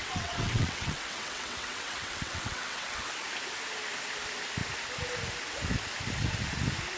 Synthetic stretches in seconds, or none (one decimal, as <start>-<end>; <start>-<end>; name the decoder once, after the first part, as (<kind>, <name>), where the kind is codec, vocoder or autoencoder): 0.0-3.0 (vocoder, WaveNeXt)